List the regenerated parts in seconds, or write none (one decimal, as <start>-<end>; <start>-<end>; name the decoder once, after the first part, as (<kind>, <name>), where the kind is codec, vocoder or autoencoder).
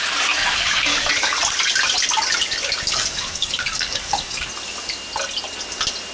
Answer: 0.4-1.1 (codec, DAC); 2.9-4.5